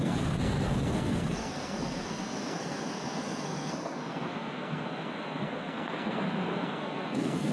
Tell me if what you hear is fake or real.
fake